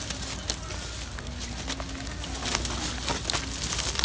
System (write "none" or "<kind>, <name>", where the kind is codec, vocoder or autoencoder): none